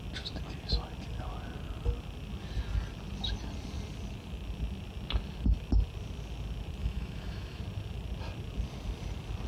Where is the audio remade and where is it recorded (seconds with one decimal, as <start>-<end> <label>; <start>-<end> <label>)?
0.0-6.8 recorded; 6.8-7.6 remade; 7.6-9.5 recorded